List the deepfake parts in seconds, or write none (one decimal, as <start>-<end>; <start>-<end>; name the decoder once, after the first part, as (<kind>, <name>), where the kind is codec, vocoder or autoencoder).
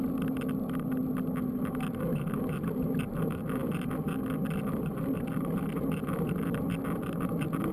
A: none